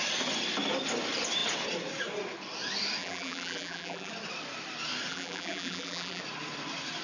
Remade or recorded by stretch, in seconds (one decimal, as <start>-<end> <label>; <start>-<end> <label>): 0.0-3.0 recorded; 3.0-4.1 remade; 4.1-5.1 recorded; 5.1-6.2 remade; 6.2-7.0 recorded